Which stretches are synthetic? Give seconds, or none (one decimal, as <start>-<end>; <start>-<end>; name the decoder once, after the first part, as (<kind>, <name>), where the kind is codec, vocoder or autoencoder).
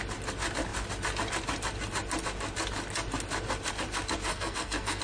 4.3-5.0 (codec, SNAC)